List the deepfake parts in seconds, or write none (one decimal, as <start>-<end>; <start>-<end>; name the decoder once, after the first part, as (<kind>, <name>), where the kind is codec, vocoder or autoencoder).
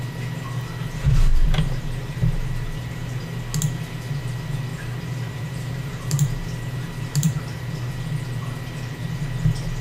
1.3-3.2 (vocoder, BigVGAN v2); 4.7-7.9